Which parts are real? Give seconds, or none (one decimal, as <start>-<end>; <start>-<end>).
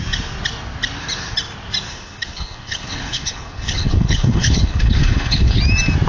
0.0-1.9; 5.6-6.1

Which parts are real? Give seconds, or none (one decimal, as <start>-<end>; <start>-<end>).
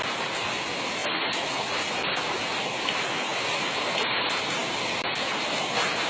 0.0-6.1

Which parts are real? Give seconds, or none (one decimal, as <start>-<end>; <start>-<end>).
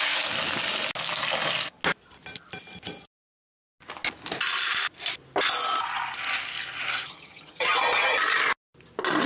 0.0-7.1; 7.7-9.3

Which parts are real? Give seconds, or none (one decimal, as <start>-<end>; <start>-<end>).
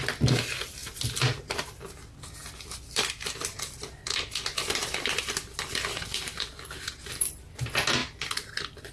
0.0-0.8; 1.4-2.4; 7.6-8.9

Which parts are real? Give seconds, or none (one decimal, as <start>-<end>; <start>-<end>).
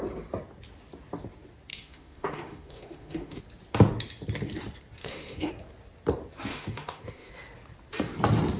0.0-1.7; 3.4-5.0; 5.5-6.5; 7.3-8.6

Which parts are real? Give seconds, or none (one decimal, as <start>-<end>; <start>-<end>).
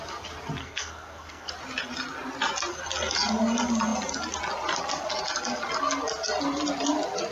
0.0-0.6; 1.5-7.3